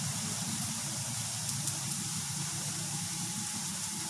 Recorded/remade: remade